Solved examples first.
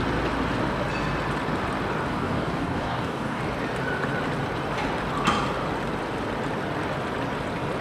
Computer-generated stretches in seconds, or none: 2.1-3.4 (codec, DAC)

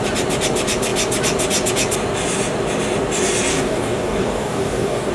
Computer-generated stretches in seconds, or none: 3.5-5.1 (codec, DAC)

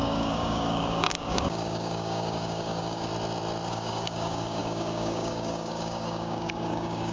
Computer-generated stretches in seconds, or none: 0.0-3.1 (codec, DAC); 3.7-7.1

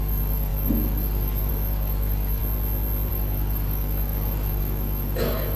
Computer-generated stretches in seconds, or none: 0.0-2.4 (codec, DAC); 3.1-5.6

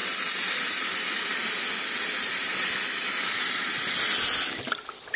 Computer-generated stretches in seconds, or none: none